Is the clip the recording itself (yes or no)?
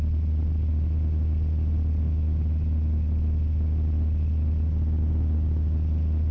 yes